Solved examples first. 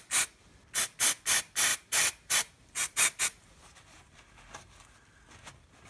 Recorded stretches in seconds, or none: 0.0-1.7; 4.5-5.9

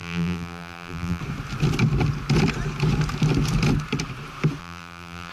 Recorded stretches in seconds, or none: 1.2-4.6